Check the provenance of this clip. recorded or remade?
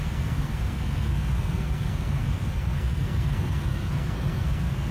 remade